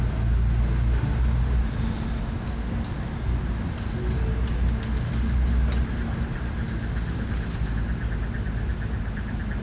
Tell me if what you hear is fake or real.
real